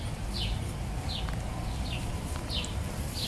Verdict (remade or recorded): recorded